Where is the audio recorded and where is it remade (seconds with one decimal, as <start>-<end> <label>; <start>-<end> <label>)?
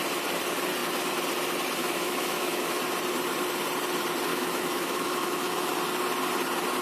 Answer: 0.0-1.8 recorded; 1.8-2.8 remade; 2.8-4.3 recorded; 4.3-5.7 remade; 5.7-6.8 recorded